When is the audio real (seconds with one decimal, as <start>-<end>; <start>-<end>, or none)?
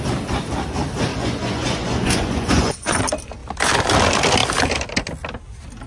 0.0-1.1; 3.0-5.9